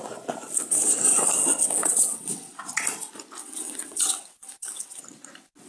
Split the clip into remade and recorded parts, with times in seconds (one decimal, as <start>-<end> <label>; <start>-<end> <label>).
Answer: 0.0-1.8 recorded; 1.8-2.7 remade; 2.7-3.4 recorded; 3.4-5.0 remade; 5.0-5.7 recorded